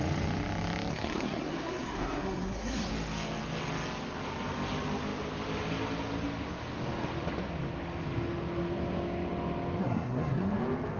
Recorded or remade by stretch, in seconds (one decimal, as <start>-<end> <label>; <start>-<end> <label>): 0.0-0.9 recorded; 0.9-2.9 remade; 2.9-9.8 recorded; 9.8-10.6 remade; 10.6-11.0 recorded